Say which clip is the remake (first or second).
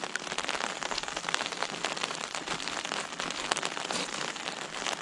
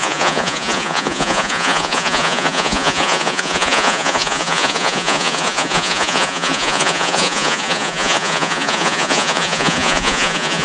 second